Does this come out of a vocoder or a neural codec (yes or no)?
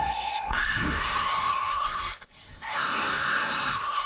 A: yes